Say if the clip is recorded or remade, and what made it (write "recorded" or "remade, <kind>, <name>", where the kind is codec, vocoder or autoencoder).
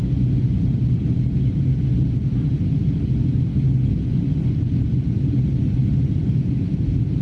recorded